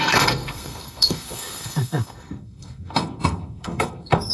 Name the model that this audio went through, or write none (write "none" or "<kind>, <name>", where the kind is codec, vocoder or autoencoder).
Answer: codec, SNAC